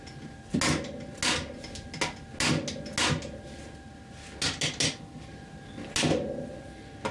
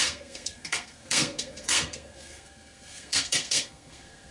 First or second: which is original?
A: first